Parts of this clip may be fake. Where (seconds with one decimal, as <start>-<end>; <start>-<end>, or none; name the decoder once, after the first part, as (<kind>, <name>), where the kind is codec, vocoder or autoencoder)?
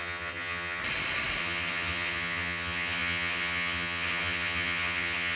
0.0-0.8 (vocoder, HiFi-GAN); 1.4-5.4